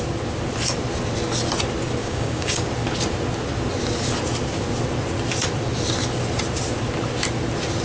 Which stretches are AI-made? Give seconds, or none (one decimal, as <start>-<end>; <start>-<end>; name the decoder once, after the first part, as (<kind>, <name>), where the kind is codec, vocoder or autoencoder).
2.0-2.7 (codec, DAC)

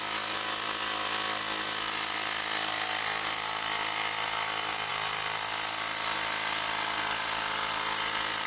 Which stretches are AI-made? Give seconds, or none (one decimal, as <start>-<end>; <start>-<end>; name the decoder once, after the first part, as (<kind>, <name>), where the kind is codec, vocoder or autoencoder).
none

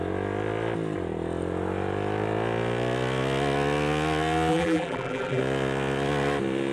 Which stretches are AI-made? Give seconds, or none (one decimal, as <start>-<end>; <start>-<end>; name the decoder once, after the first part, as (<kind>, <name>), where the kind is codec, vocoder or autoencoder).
4.5-5.4 (vocoder, BigVGAN v2)

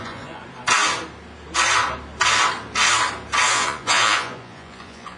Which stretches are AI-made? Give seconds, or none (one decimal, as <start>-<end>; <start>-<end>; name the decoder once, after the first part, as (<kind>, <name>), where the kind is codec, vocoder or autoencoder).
0.0-0.4 (vocoder, Vocos); 3.5-5.2

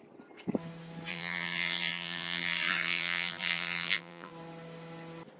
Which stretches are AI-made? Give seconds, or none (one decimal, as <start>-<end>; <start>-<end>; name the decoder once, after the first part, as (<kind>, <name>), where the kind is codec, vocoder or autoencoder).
1.1-4.3 (vocoder, BigVGAN v2)